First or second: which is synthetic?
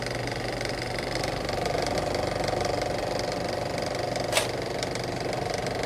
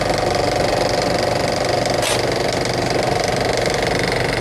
first